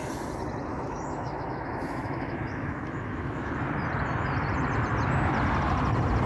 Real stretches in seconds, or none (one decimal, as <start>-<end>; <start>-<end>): 0.0-0.7; 3.5-6.3